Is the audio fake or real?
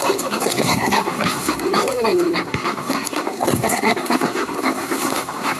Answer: fake